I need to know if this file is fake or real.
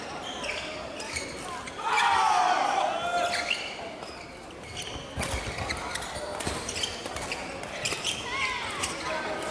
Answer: real